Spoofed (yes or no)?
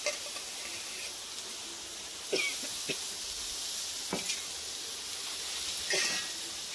no